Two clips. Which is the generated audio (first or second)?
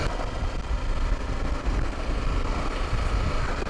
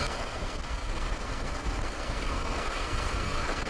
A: second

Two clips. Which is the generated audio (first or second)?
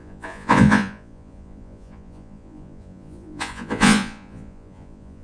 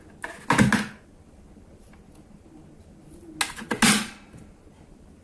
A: first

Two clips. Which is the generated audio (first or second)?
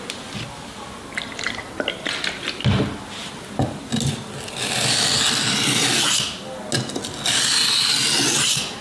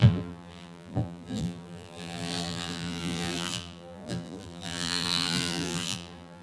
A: second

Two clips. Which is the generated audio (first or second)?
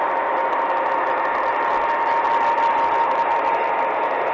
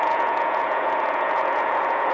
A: second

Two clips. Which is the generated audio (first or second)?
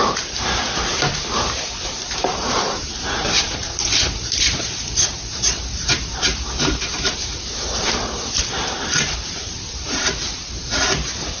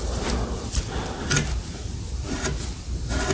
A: first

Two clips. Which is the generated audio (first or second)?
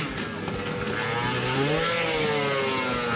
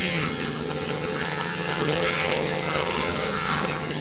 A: second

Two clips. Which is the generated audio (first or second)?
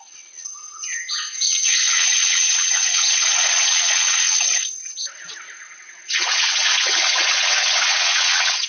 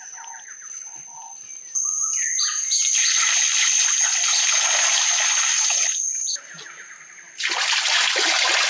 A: first